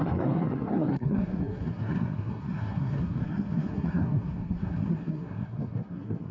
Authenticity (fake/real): fake